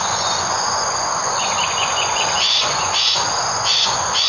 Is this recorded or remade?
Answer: remade